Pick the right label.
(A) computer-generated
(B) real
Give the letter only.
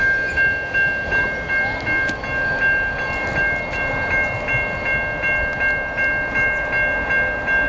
B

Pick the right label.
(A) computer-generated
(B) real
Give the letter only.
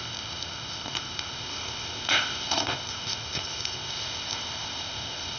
A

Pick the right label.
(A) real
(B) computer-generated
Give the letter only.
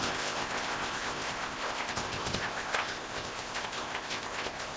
B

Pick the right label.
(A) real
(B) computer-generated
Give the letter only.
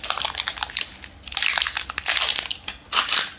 A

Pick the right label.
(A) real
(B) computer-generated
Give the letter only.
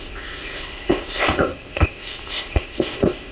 B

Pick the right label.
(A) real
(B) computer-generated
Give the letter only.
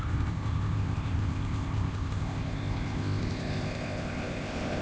B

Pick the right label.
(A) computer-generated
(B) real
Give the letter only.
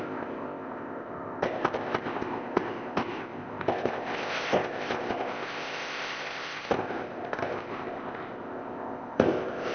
A